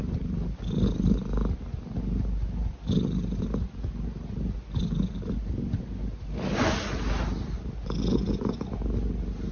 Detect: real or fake real